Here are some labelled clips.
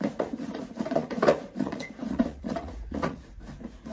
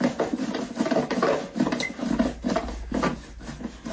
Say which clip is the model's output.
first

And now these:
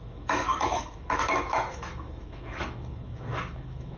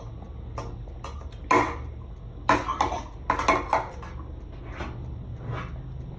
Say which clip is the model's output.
first